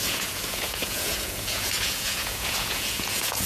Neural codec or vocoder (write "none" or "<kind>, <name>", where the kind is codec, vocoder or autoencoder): vocoder, Vocos